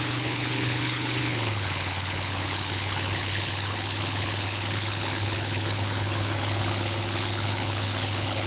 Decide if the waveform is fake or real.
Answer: fake